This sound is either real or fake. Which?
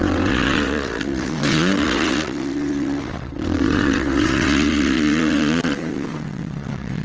fake